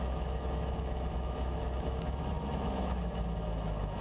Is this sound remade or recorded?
remade